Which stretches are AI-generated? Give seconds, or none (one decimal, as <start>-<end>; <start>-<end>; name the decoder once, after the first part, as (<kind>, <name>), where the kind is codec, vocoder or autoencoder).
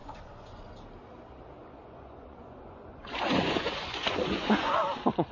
0.0-0.7 (vocoder, Vocos); 1.6-4.8